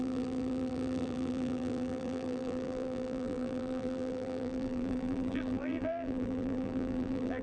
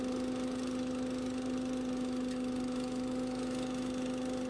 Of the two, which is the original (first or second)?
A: second